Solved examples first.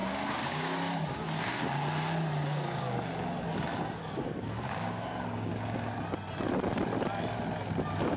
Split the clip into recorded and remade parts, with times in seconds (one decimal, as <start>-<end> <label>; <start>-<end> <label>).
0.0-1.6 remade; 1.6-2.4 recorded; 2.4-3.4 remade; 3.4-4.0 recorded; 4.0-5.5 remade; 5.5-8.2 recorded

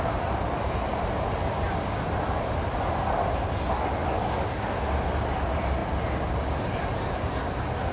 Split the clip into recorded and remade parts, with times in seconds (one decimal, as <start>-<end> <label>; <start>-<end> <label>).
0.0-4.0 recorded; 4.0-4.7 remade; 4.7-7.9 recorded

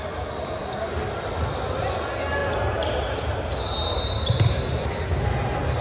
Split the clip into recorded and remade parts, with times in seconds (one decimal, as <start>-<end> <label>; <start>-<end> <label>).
0.0-5.8 recorded